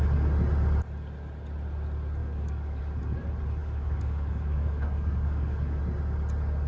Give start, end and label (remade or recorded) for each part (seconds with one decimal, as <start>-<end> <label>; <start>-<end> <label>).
0.0-2.2 recorded; 2.2-2.8 remade; 2.8-3.6 recorded; 3.6-5.8 remade; 5.8-6.7 recorded